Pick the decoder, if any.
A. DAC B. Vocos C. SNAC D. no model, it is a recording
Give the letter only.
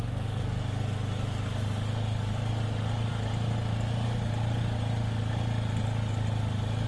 D